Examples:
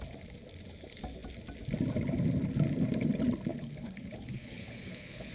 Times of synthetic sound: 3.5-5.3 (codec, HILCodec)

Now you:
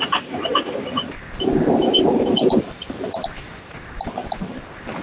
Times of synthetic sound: 0.0-5.0 (vocoder, BigVGAN v2)

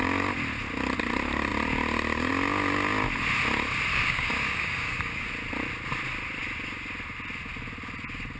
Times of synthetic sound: 3.9-5.3 (codec, DAC)